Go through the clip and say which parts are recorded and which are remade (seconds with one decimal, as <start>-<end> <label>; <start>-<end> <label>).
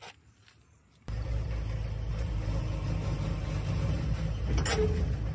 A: 0.0-2.1 recorded; 2.1-2.6 remade; 2.6-5.3 recorded